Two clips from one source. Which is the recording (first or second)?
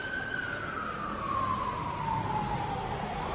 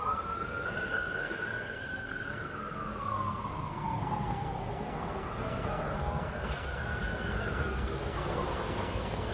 first